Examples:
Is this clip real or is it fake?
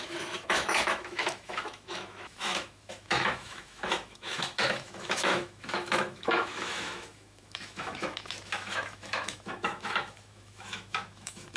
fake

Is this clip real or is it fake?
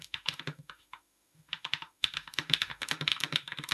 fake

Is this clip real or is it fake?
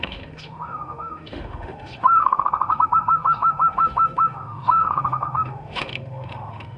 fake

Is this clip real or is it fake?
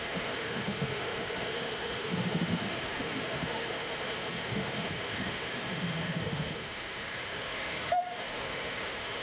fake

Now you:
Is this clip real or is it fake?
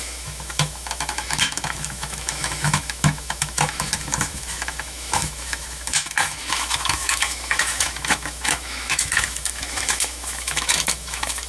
fake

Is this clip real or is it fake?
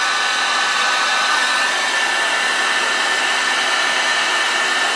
real